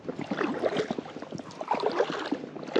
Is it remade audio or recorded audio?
recorded